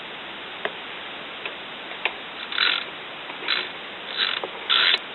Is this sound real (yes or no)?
yes